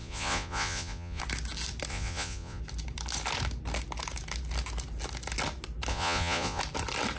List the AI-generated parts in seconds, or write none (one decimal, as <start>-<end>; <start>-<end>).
0.0-1.2; 1.9-2.6; 5.9-6.6